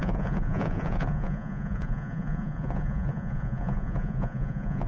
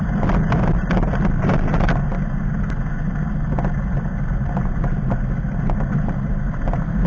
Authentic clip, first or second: second